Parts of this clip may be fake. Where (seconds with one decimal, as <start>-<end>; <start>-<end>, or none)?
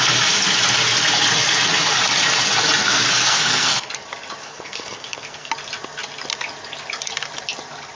2.8-3.9; 4.4-5.5